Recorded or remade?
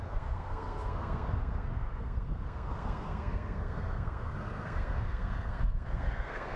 remade